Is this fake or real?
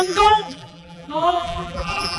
fake